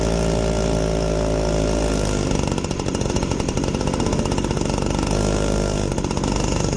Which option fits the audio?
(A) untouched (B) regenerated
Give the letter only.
A